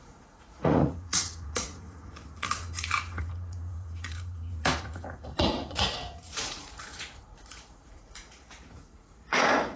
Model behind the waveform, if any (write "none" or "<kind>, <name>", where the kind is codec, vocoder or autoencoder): vocoder, Vocos